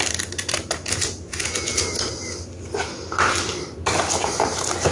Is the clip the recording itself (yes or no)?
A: yes